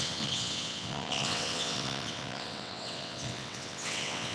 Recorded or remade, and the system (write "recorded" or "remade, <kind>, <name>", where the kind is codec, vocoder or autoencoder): remade, vocoder, WaveNeXt